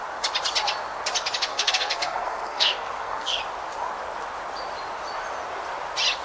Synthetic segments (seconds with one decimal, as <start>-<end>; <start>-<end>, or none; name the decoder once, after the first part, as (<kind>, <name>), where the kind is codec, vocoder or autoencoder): 1.5-3.4 (codec, SNAC)